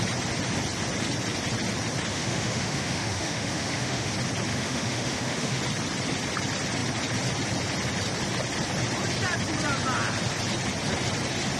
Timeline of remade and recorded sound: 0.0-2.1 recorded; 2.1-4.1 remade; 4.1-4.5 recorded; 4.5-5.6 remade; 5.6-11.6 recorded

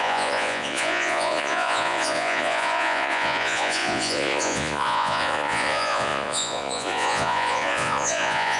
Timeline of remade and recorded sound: 0.0-8.6 remade

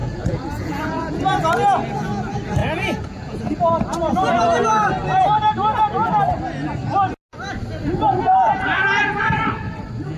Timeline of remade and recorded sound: 0.0-1.2 remade; 1.2-2.6 recorded; 2.6-3.4 remade; 3.4-10.2 recorded

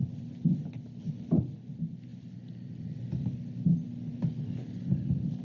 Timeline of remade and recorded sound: 0.0-5.4 recorded